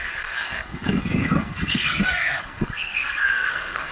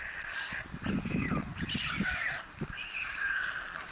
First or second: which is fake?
first